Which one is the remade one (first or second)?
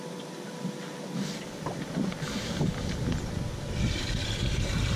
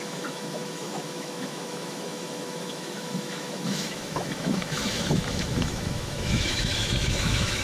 second